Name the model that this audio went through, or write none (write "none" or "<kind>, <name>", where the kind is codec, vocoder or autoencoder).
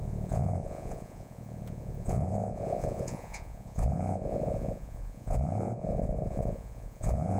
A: vocoder, Vocos